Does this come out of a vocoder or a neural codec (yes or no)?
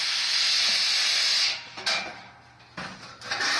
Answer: no